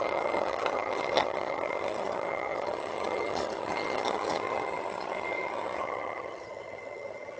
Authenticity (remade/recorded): remade